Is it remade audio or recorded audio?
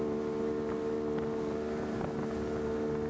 recorded